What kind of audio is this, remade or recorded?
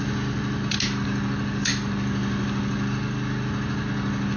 recorded